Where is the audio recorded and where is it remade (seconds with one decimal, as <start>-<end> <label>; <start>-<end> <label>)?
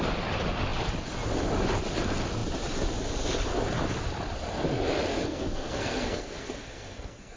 0.0-5.1 recorded; 5.1-7.4 remade